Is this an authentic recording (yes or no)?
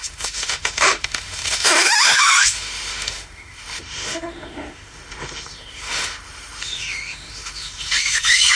no